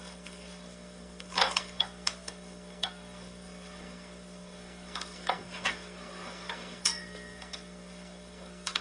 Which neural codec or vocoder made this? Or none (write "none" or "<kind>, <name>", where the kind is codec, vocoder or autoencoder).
codec, SNAC